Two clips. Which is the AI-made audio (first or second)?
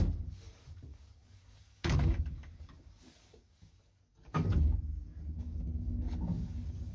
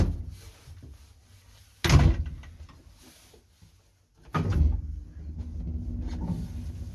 first